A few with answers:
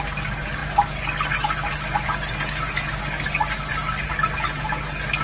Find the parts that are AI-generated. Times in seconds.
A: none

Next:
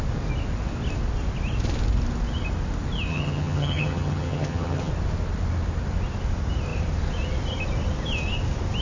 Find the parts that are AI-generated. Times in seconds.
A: 3.1-4.9 (vocoder, HiFi-GAN)

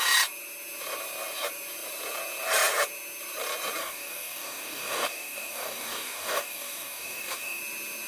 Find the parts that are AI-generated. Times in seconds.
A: 3.8-7.6 (codec, DAC)

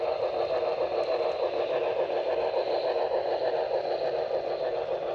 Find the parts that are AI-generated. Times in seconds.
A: none

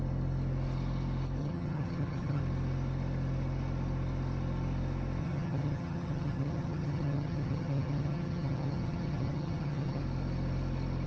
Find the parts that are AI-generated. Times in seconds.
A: 1.4-2.4 (vocoder, HiFi-GAN); 5.2-10.0

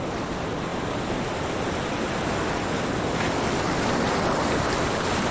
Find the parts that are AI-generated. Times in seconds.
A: none